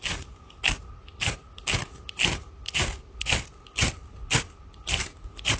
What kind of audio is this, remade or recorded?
recorded